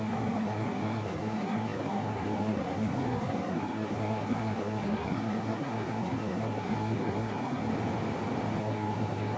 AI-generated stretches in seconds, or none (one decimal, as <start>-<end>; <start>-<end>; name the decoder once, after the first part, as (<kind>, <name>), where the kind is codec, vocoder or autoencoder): 0.0-7.7 (codec, SNAC); 8.6-9.4